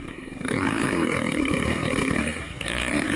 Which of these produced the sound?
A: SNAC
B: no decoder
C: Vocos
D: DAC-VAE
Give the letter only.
A